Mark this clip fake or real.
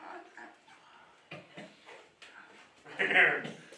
real